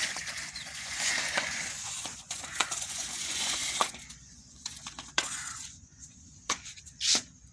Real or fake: fake